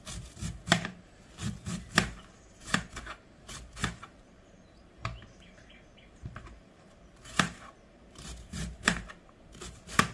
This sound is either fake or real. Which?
fake